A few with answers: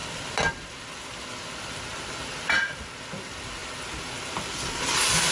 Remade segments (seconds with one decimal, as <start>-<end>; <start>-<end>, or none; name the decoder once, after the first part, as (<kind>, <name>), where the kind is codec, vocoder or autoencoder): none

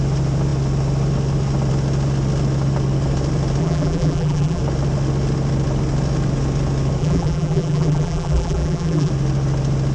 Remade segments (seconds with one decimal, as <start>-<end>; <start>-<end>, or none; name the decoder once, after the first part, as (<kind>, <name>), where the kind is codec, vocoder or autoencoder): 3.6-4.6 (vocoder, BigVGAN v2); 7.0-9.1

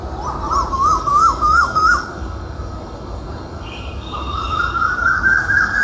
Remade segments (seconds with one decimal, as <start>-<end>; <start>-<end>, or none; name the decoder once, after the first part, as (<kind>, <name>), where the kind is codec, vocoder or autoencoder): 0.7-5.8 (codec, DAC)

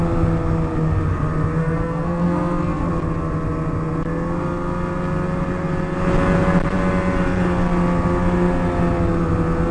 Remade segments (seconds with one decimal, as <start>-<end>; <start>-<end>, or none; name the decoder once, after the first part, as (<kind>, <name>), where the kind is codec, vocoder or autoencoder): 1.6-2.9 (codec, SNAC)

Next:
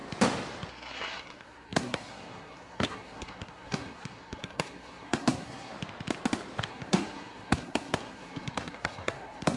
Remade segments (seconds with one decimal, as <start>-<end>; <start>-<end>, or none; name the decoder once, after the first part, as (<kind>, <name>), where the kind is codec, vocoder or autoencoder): 0.7-5.7 (codec, SNAC); 6.7-9.6

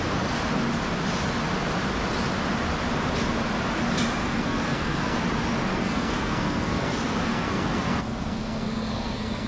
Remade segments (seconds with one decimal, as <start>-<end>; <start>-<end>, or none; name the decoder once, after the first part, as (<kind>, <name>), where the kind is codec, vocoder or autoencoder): 4.2-5.2 (codec, SNAC); 5.7-9.5

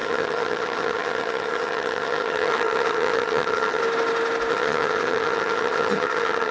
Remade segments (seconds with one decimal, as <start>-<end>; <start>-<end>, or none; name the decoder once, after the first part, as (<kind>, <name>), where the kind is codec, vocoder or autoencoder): 0.0-3.8 (vocoder, HiFi-GAN); 4.5-6.5